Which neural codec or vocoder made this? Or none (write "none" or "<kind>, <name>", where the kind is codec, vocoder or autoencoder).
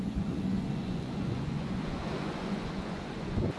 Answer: vocoder, Vocos